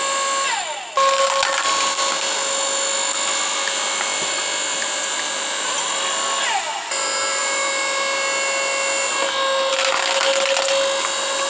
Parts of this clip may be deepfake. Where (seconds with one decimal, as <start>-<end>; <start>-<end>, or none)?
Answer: none

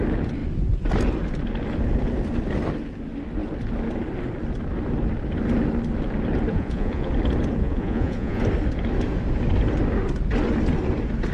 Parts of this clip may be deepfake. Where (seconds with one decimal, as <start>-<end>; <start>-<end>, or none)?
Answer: 6.5-7.1; 7.6-8.4

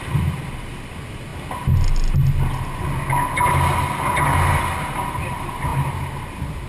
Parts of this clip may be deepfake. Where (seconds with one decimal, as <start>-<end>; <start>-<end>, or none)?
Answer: 0.0-1.3; 4.5-6.7

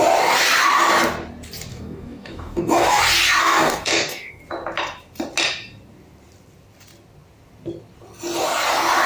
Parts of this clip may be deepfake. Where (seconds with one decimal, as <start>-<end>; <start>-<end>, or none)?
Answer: 1.7-3.0; 3.4-4.4

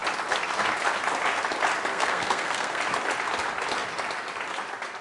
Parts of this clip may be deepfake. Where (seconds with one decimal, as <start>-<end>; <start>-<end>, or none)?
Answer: 1.9-2.8